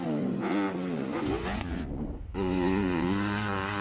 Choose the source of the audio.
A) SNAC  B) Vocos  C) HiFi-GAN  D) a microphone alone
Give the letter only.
B